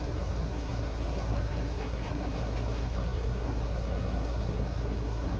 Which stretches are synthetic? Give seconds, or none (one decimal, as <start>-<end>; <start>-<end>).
0.0-5.4